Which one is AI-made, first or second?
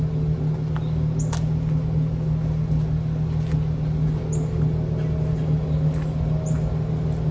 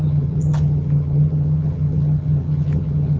second